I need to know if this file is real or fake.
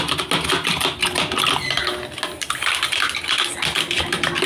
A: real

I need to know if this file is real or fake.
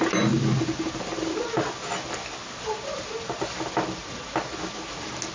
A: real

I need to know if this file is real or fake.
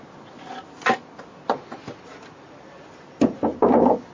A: real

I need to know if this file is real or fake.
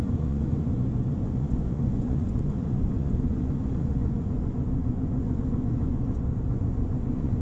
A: fake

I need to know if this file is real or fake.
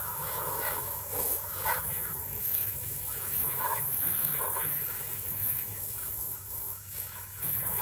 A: fake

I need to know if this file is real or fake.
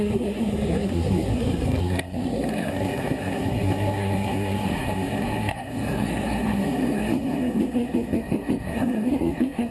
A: fake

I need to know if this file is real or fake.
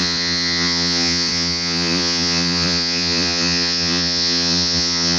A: fake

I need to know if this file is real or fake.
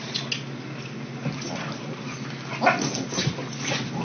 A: real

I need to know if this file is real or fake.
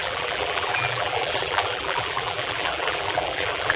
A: fake